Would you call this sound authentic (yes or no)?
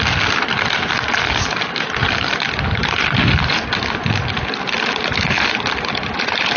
yes